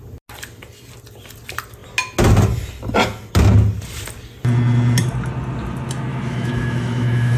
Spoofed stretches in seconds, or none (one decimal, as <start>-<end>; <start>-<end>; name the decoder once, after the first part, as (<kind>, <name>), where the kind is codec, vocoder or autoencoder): 6.1-7.4 (autoencoder, DAC-VAE)